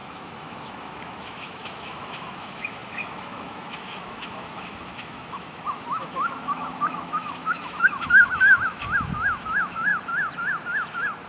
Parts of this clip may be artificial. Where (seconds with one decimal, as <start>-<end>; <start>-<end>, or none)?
0.0-9.9